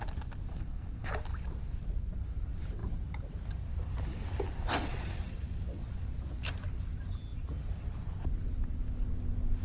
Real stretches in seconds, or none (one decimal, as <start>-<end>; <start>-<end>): 0.0-0.5; 1.1-9.6

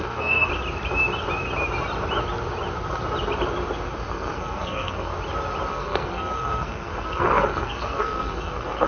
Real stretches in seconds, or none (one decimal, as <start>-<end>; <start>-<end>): 0.5-4.1; 5.1-5.7

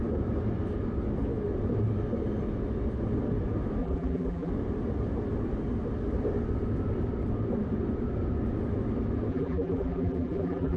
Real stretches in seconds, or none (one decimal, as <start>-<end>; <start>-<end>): 0.0-3.8; 4.5-9.3

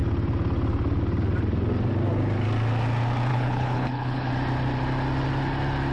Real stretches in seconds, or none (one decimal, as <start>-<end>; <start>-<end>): 0.0-3.3; 4.3-5.9

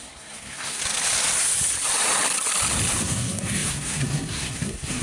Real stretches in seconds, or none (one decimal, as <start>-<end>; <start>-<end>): 0.8-3.0

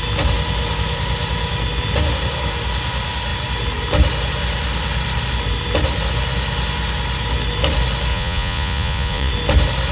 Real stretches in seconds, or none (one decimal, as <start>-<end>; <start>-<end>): 0.0-8.1; 9.3-9.9

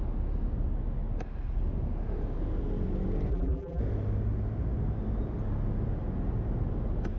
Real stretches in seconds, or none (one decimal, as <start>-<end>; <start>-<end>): 0.0-3.3; 3.8-7.2